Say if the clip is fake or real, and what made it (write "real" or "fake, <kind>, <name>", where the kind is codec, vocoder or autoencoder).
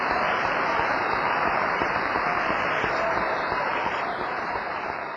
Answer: fake, vocoder, BigVGAN v2